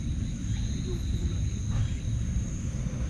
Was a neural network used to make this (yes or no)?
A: no